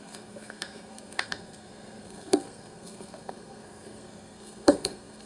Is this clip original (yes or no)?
no